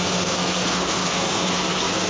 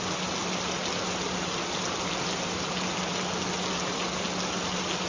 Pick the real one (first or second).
second